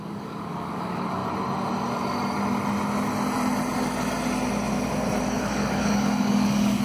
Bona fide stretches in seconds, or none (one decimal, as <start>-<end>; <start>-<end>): 1.2-5.2

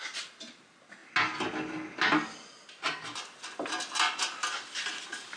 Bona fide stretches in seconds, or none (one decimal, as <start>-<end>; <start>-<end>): 0.0-5.4

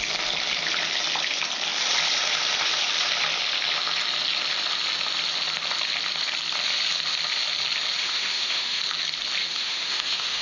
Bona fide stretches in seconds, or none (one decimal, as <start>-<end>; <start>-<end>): 0.0-8.0; 8.8-9.4

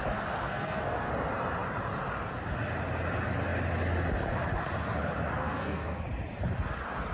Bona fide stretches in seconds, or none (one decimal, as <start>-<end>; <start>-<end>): 0.0-0.4; 1.1-5.4; 6.0-7.1

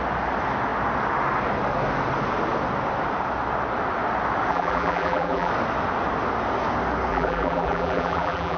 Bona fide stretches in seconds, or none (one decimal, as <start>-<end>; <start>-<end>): 0.0-4.5; 5.5-7.1

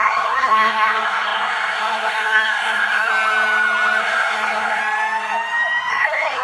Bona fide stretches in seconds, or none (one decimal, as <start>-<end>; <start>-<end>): 3.1-4.0; 4.8-5.9

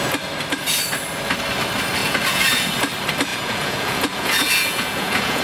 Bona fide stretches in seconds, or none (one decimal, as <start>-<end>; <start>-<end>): 0.0-2.0; 2.7-3.3

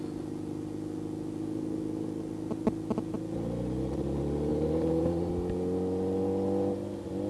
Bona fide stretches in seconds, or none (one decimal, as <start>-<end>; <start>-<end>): 0.0-4.5; 5.3-7.3